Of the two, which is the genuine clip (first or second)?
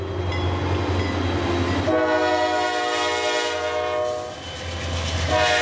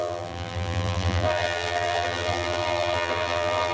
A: first